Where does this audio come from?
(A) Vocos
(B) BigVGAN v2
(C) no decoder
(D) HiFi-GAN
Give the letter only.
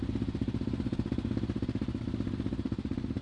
C